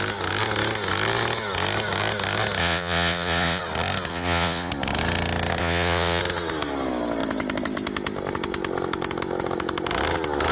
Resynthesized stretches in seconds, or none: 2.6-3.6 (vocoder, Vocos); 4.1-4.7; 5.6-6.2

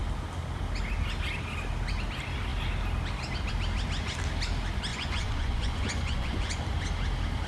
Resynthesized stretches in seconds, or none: 4.9-6.6 (vocoder, Vocos)

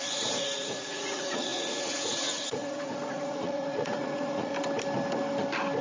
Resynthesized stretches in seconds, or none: 0.0-4.5 (vocoder, Vocos)

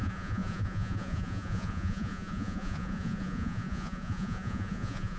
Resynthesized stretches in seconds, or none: 0.0-5.2 (vocoder, Vocos)